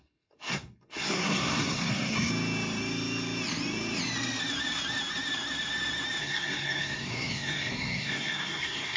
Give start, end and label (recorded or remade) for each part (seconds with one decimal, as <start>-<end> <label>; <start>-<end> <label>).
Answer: 0.0-2.3 remade; 2.3-6.2 recorded; 6.2-9.0 remade